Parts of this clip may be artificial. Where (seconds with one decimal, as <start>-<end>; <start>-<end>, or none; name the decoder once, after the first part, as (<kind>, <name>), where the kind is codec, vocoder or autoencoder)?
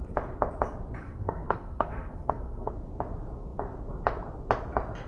1.0-2.7 (codec, SNAC)